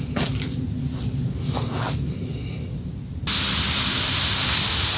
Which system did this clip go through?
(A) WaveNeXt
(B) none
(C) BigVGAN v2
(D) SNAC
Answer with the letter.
B